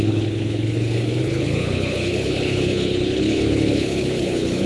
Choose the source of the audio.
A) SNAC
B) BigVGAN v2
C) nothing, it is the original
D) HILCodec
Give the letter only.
D